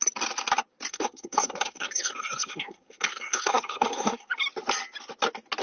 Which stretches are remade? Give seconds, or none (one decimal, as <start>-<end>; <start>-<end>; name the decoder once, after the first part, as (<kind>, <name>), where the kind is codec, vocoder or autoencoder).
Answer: 0.9-4.3 (codec, SNAC)